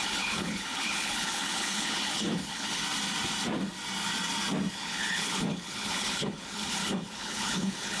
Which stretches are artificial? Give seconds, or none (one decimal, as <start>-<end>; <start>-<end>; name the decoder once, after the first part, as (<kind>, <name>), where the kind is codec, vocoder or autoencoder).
0.0-2.8 (codec, HILCodec); 4.7-8.0